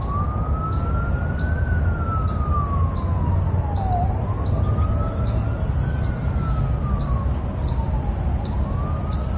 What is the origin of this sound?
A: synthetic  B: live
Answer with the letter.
B